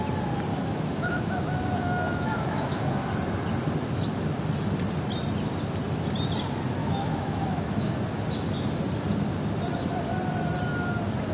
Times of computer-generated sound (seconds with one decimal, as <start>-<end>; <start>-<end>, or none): 0.5-3.0; 6.8-7.9